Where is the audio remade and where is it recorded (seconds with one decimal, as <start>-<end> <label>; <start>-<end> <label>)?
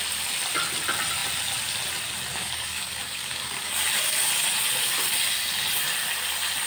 0.0-2.3 recorded; 2.3-3.8 remade; 3.8-6.7 recorded